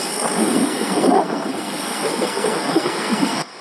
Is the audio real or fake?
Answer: fake